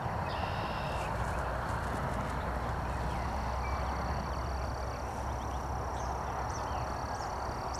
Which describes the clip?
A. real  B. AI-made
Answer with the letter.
A